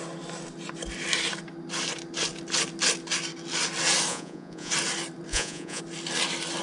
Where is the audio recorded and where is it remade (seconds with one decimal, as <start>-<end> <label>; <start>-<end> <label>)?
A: 0.0-4.1 recorded; 4.1-4.7 remade; 4.7-5.3 recorded; 5.3-5.8 remade; 5.8-6.6 recorded